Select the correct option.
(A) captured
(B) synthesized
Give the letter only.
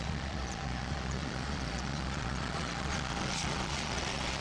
B